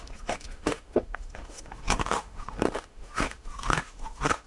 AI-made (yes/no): yes